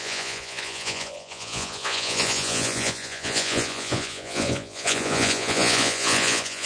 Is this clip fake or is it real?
fake